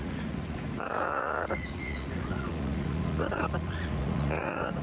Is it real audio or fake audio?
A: fake